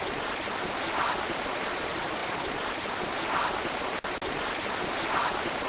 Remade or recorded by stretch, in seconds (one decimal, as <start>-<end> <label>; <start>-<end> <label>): 0.0-5.7 recorded

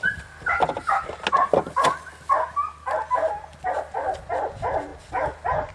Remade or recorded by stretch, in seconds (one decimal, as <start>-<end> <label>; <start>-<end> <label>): 0.0-5.7 recorded

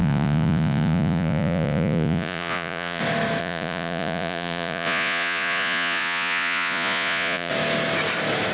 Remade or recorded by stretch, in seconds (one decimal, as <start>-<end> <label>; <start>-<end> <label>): 0.0-3.0 remade; 3.0-3.4 recorded; 3.4-7.5 remade; 7.5-8.5 recorded

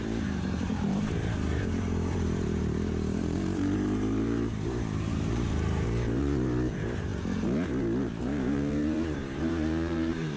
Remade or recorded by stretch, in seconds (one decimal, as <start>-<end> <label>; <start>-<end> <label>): 0.0-7.1 remade; 7.1-8.0 recorded; 8.0-10.4 remade

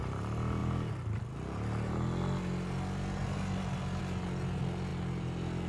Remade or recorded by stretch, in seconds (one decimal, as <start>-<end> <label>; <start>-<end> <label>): 0.0-5.7 recorded

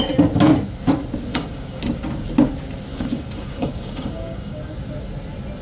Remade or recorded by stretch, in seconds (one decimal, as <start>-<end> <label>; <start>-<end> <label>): 0.0-1.3 recorded; 1.3-1.8 remade; 1.8-2.9 recorded; 2.9-4.7 remade; 4.7-5.6 recorded

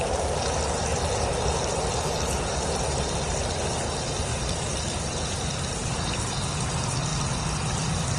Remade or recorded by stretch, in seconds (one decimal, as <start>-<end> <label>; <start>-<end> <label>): 0.0-8.2 recorded

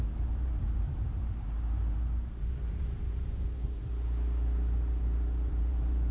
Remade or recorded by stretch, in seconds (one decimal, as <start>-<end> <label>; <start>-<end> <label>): 0.0-3.8 remade; 3.8-5.5 recorded; 5.5-6.1 remade